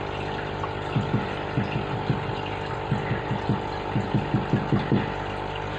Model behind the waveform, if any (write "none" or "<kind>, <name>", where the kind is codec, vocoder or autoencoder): none